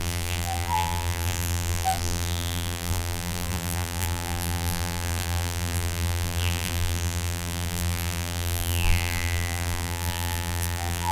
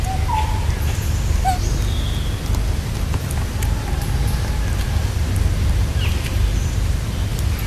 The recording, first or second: second